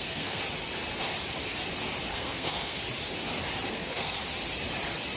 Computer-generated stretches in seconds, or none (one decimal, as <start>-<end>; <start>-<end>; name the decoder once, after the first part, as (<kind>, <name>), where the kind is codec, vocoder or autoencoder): 0.0-0.4 (codec, SNAC); 2.1-2.8; 3.7-4.2